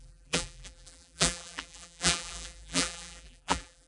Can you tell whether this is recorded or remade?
remade